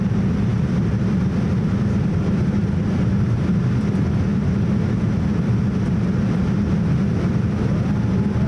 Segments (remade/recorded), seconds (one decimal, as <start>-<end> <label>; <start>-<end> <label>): 0.0-8.5 recorded